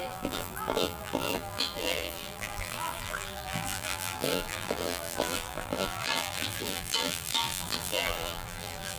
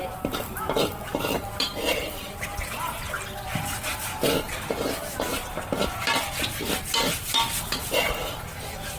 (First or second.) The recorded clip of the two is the second